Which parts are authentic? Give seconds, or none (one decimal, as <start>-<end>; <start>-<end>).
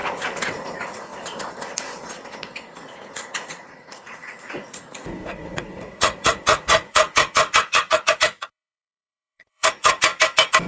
0.0-0.5; 1.1-2.8; 10.1-10.7